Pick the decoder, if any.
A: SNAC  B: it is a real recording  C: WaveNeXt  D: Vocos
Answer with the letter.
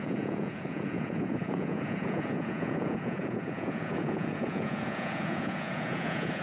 D